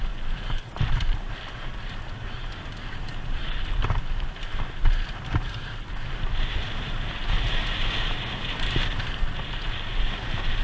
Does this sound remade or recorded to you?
recorded